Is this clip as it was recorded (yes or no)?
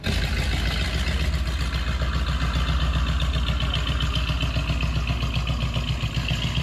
yes